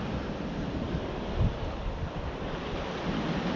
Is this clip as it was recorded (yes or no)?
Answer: yes